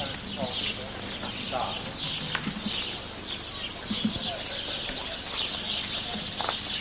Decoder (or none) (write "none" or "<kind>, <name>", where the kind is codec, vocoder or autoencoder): none